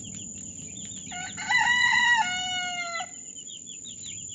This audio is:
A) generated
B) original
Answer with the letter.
B